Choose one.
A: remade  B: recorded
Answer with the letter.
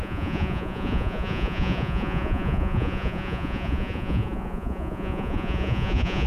A